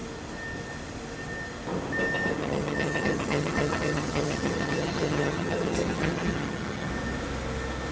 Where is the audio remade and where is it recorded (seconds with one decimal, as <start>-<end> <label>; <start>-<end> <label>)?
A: 0.0-2.4 recorded; 2.4-6.9 remade; 6.9-7.9 recorded